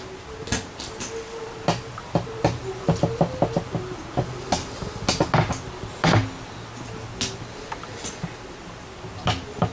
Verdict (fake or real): real